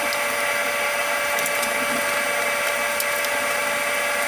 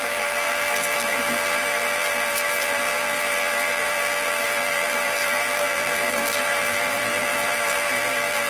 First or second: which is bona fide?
first